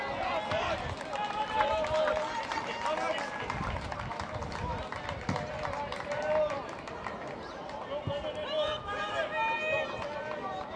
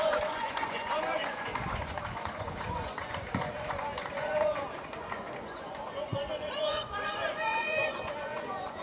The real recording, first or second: first